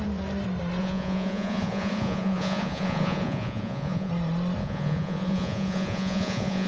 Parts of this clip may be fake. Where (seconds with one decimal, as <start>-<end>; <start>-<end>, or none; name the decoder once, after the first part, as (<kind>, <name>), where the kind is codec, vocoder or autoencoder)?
0.8-4.1 (vocoder, Vocos); 4.6-6.7